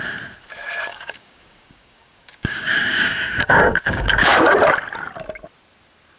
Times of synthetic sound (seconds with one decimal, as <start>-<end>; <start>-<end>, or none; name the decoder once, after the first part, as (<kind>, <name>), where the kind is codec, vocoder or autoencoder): 0.9-4.6 (codec, DAC)